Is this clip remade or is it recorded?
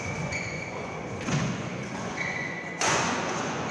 remade